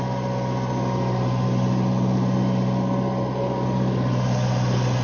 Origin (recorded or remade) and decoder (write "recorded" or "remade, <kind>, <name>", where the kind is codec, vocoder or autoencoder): recorded